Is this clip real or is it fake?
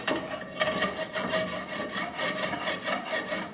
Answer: real